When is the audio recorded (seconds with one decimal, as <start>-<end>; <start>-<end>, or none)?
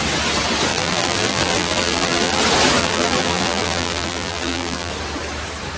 0.0-0.7; 2.4-2.8; 4.9-5.8